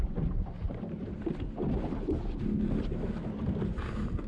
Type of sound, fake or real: real